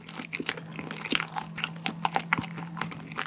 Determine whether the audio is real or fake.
real